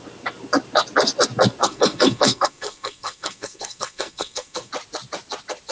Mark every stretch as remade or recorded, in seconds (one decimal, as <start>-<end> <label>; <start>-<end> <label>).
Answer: 0.0-1.6 recorded; 1.6-4.7 remade; 4.7-5.7 recorded